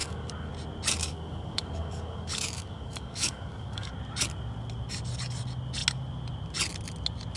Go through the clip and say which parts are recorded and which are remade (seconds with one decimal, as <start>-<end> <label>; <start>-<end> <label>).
0.0-0.5 remade; 0.5-1.0 recorded; 1.0-3.9 remade; 3.9-7.4 recorded